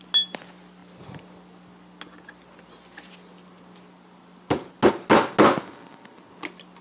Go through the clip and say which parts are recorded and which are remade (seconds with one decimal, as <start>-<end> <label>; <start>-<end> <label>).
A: 0.0-6.8 recorded